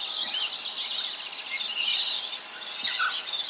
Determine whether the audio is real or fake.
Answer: real